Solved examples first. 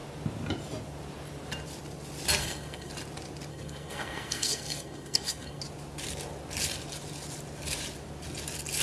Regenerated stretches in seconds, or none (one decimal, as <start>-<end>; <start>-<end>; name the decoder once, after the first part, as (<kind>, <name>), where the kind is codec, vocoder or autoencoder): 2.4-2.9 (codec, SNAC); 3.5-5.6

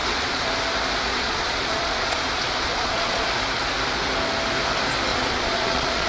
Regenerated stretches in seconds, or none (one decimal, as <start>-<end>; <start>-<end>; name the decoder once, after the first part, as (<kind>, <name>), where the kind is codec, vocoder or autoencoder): 0.0-0.5 (vocoder, Vocos); 1.1-3.3; 5.1-6.1

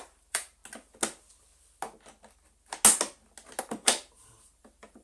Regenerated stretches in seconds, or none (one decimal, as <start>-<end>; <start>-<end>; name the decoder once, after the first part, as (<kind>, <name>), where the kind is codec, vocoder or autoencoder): 0.0-0.6 (vocoder, BigVGAN v2); 3.6-5.0

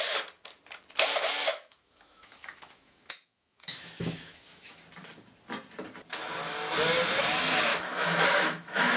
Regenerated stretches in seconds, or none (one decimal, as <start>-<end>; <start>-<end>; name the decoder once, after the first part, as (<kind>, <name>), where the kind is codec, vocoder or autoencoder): 1.5-4.8 (autoencoder, DAC-VAE); 7.7-9.0